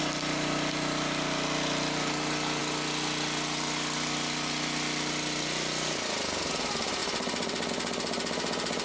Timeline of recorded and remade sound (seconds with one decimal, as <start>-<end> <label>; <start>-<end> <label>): 0.0-7.0 recorded; 7.0-7.7 remade; 7.7-8.8 recorded